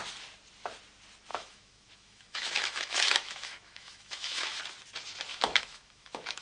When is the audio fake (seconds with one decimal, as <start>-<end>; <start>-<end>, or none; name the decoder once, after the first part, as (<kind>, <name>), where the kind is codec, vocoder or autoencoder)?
1.3-4.6 (autoencoder, DAC-VAE); 5.3-6.4